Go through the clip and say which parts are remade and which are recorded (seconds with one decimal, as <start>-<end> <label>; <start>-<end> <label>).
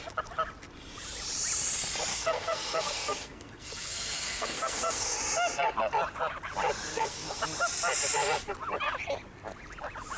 0.0-2.1 recorded; 2.1-5.2 remade; 5.2-6.9 recorded; 6.9-7.4 remade; 7.4-10.2 recorded